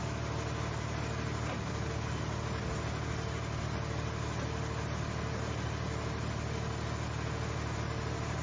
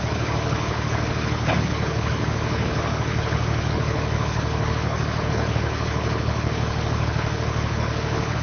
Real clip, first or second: first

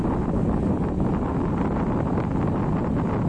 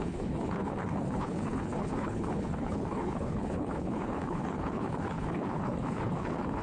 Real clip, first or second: first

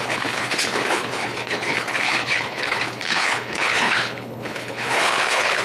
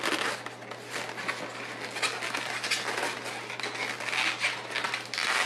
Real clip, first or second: second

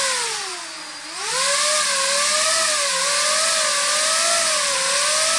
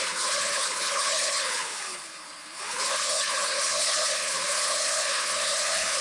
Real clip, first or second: first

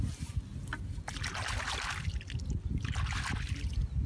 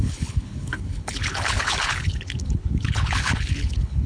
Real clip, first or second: first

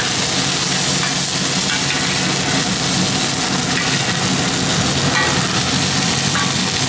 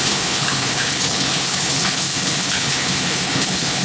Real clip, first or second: first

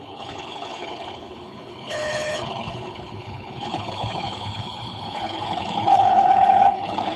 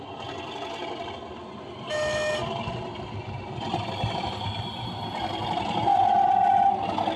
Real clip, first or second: second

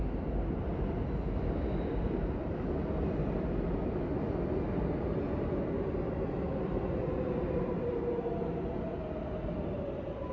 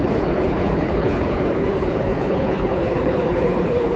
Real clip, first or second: first